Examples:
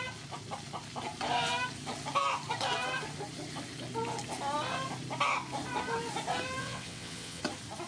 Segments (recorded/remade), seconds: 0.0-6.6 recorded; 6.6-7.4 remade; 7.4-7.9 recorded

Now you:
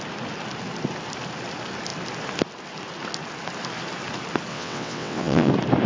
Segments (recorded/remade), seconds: 0.0-4.5 recorded; 4.5-5.5 remade; 5.5-5.9 recorded

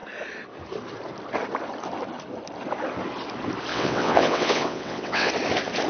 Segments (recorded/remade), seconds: 0.0-3.7 recorded; 3.7-5.3 remade; 5.3-5.9 recorded